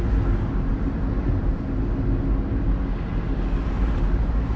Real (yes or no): yes